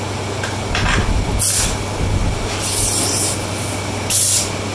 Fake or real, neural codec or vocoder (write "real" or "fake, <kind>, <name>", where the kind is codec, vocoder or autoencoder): real